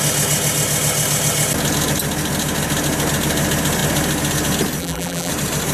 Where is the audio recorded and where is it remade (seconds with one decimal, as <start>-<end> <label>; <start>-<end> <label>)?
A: 0.0-4.8 recorded; 4.8-5.3 remade; 5.3-5.7 recorded